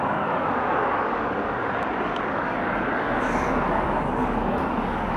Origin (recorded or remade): remade